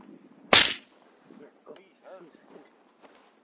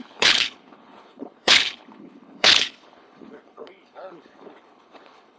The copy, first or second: second